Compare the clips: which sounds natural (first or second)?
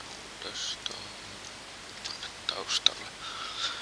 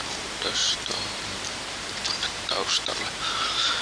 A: first